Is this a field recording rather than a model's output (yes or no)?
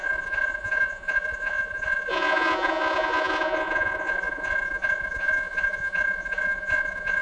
no